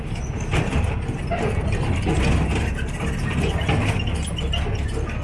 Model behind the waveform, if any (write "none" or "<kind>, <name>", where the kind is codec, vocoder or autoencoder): none